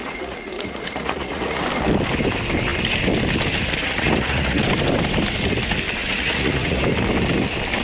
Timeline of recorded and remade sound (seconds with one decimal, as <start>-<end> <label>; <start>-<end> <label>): 0.0-1.6 remade; 1.6-3.8 recorded; 3.8-4.6 remade; 4.6-6.0 recorded; 6.0-6.8 remade; 6.8-7.8 recorded